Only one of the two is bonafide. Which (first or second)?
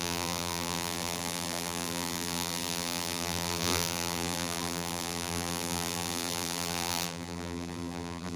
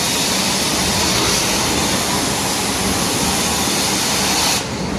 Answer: second